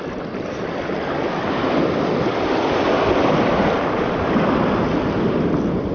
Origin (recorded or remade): recorded